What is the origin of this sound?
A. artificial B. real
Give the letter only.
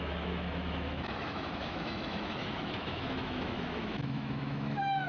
A